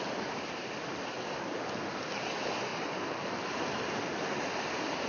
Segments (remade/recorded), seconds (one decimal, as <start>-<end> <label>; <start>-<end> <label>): 0.0-5.1 recorded

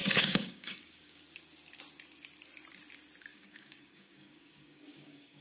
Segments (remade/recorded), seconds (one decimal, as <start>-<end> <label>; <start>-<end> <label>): 0.0-1.2 remade; 1.2-3.3 recorded; 3.3-5.4 remade

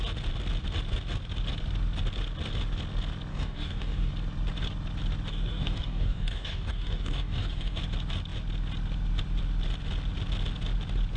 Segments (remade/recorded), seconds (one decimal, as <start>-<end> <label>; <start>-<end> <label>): 0.0-3.3 recorded; 3.3-4.1 remade; 4.1-5.3 recorded; 5.3-7.8 remade; 7.8-11.2 recorded

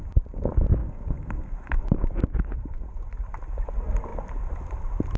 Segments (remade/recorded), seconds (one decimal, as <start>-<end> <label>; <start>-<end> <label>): 0.0-0.8 recorded; 0.8-1.8 remade; 1.8-5.2 recorded

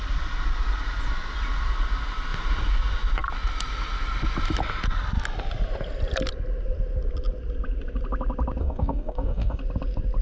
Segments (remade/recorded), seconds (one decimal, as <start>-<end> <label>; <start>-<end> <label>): 0.0-8.6 recorded; 8.6-9.6 remade; 9.6-10.2 recorded

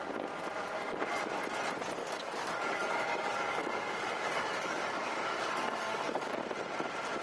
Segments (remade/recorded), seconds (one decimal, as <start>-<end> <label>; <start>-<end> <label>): 0.0-2.0 recorded; 2.0-6.3 remade; 6.3-7.2 recorded

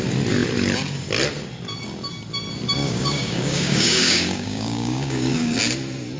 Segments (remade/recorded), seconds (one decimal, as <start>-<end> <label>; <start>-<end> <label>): 0.0-2.8 recorded; 2.8-5.6 remade; 5.6-6.2 recorded